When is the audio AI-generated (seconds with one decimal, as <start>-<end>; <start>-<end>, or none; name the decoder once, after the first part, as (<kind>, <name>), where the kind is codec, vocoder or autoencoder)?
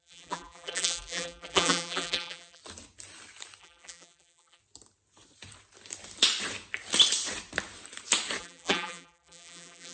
0.0-2.6 (vocoder, BigVGAN v2); 3.6-4.6; 8.4-9.9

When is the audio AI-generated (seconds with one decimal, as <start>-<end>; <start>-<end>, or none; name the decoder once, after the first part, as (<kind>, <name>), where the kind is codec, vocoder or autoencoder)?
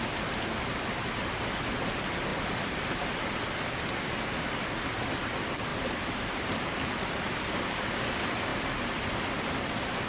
2.3-3.1 (vocoder, BigVGAN v2); 5.7-7.5